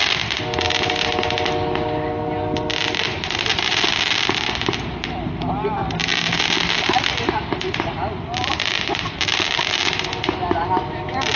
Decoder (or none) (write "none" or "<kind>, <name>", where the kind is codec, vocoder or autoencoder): none